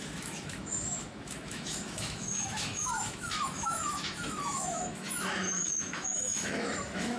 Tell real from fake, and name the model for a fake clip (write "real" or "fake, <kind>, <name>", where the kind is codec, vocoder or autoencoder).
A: fake, autoencoder, DAC-VAE